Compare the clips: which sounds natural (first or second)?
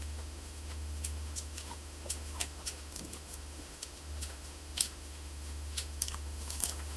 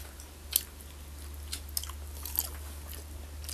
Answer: second